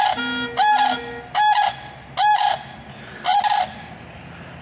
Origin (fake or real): real